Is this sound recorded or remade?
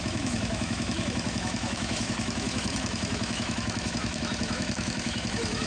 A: remade